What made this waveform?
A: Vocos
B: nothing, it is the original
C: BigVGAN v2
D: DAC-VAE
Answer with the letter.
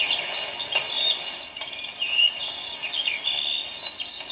B